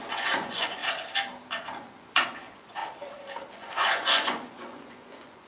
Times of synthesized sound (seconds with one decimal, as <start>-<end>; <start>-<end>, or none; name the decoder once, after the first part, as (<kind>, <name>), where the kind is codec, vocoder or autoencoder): 0.0-0.8 (vocoder, Vocos); 1.6-2.8; 3.5-5.5